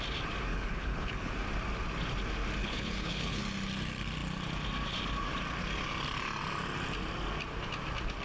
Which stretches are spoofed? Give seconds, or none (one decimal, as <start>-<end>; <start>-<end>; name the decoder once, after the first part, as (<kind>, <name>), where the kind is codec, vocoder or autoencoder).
0.5-1.3 (codec, HILCodec); 2.6-3.4